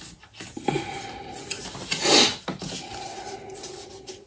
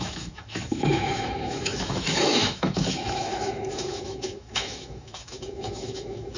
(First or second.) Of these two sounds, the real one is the first